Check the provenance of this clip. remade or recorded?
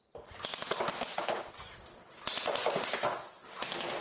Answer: recorded